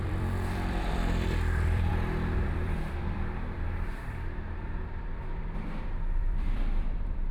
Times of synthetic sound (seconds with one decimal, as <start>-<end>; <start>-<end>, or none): 0.0-7.3

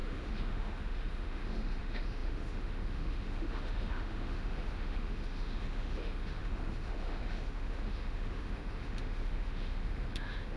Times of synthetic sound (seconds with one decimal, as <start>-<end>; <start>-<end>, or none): 0.0-10.6

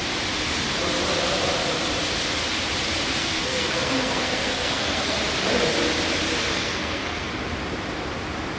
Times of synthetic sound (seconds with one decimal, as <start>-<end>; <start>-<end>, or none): 3.2-5.2; 6.5-7.3